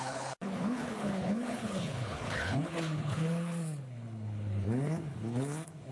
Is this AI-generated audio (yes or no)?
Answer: yes